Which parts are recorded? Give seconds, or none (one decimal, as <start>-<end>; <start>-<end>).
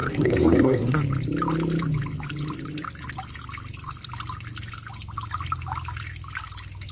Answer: 1.0-6.9